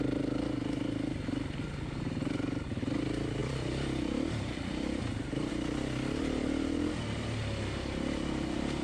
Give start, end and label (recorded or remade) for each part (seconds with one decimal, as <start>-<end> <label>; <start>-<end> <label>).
0.0-3.4 recorded; 3.4-5.5 remade; 5.5-8.8 recorded